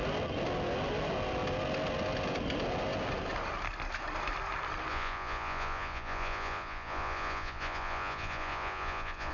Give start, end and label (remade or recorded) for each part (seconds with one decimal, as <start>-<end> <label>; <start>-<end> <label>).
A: 0.0-4.9 recorded; 4.9-9.3 remade